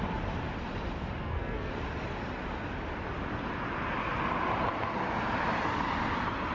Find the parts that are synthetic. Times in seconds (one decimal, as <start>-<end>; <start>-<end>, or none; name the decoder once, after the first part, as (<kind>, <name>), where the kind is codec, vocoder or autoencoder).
1.2-1.7 (codec, SNAC)